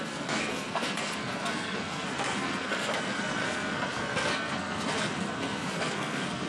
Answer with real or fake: fake